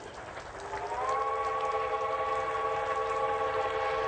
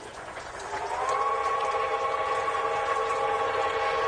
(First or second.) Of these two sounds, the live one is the first